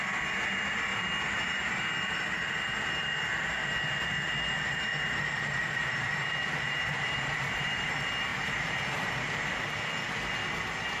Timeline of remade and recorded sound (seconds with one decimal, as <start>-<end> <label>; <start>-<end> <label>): 0.0-0.9 recorded; 0.9-1.8 remade; 1.8-4.9 recorded; 4.9-7.9 remade; 7.9-8.3 recorded; 8.3-9.6 remade; 9.6-11.0 recorded